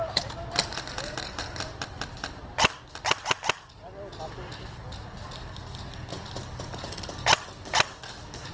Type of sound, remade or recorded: recorded